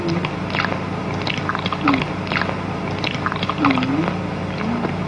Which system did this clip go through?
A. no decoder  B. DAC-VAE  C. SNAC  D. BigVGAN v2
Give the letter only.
A